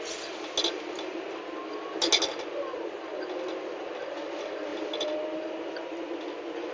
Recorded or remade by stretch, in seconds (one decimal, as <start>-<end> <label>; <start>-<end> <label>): 0.0-6.7 recorded